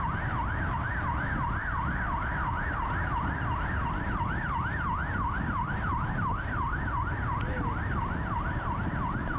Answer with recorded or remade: recorded